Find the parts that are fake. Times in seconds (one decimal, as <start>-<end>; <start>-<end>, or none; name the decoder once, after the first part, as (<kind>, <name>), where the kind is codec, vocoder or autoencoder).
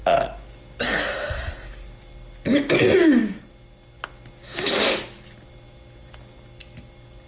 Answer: none